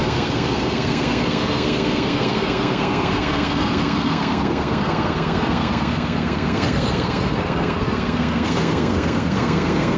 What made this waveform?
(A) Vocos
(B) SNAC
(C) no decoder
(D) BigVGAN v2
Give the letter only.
B